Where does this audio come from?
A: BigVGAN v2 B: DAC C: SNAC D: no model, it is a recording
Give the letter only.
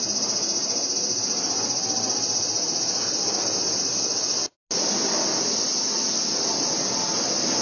D